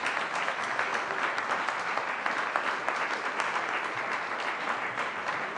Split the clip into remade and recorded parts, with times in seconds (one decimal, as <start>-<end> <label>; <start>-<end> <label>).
0.0-5.6 recorded